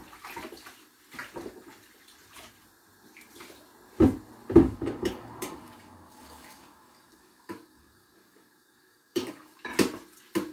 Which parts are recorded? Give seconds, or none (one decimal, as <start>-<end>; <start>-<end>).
0.0-4.6; 9.7-10.5